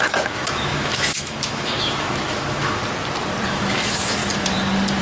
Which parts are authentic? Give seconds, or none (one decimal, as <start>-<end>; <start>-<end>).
2.8-3.5; 4.2-5.0